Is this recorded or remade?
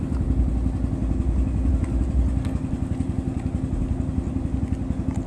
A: recorded